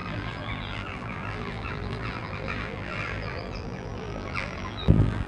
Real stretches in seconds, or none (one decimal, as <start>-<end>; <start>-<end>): none